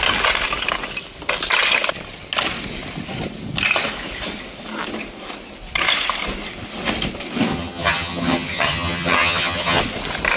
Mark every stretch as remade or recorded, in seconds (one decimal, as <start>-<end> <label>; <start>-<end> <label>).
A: 0.0-7.5 recorded; 7.5-9.8 remade; 9.8-10.4 recorded